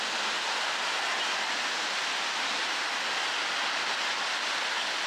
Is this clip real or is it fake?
real